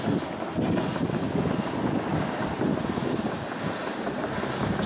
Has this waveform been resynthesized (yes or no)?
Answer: no